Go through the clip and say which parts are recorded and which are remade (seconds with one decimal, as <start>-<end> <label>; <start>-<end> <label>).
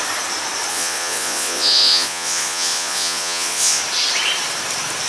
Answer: 0.0-0.7 recorded; 0.7-3.8 remade; 3.8-5.1 recorded